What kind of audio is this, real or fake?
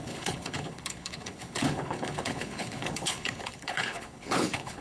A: fake